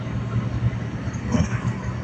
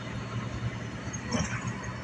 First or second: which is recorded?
second